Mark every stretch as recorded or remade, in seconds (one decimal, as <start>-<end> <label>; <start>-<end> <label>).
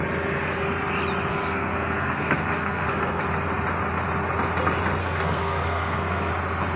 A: 0.0-1.3 recorded; 1.3-3.2 remade; 3.2-5.0 recorded; 5.0-6.3 remade; 6.3-6.8 recorded